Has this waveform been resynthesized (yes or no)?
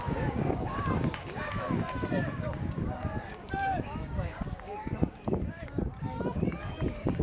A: yes